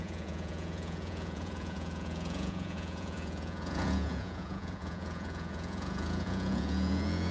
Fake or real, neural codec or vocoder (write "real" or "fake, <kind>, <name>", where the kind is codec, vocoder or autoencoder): fake, vocoder, Vocos